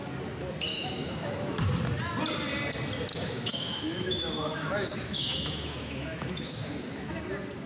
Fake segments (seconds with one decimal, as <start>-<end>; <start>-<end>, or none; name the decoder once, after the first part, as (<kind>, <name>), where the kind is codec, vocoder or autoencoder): 0.7-1.6 (autoencoder, DAC-VAE); 3.1-7.1